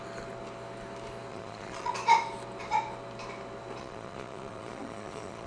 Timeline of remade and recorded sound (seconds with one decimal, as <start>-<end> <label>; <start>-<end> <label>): 0.0-1.3 recorded; 1.3-1.9 remade; 1.9-3.8 recorded; 3.8-5.5 remade